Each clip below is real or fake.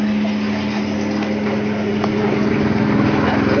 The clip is real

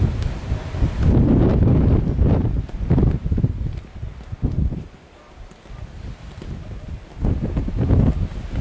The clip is real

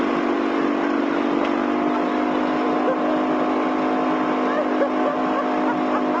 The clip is real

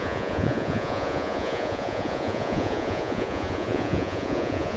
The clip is fake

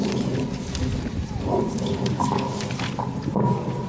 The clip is real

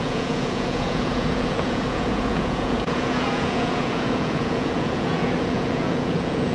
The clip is fake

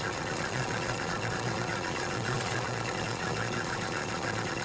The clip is fake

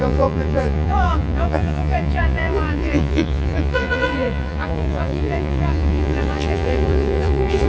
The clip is fake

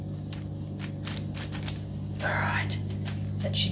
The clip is real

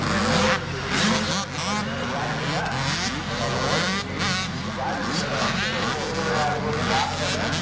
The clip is real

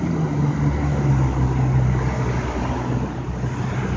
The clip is real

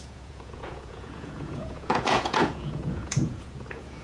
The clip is fake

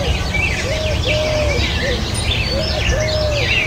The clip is real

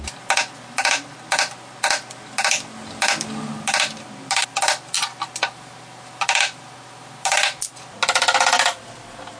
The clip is real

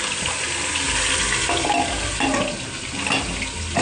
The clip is real